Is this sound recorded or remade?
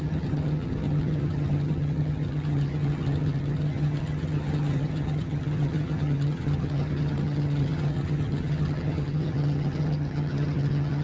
remade